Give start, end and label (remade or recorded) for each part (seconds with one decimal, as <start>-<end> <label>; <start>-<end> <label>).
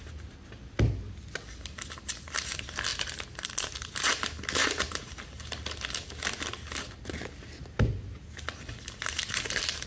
0.0-4.6 recorded; 4.6-5.6 remade; 5.6-9.9 recorded